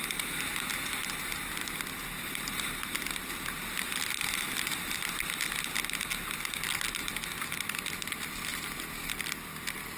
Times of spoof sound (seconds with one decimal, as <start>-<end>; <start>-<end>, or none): 1.0-5.1; 8.5-10.0